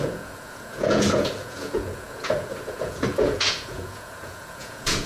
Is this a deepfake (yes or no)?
yes